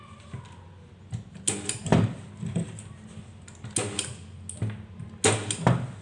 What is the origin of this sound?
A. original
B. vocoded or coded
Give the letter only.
A